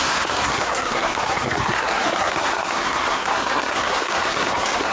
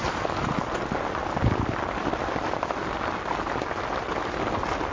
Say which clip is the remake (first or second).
first